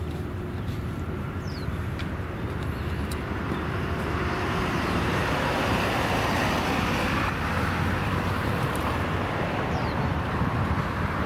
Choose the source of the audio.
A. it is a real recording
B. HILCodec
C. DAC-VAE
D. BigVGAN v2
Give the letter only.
D